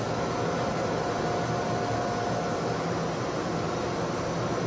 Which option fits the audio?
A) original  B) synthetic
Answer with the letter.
A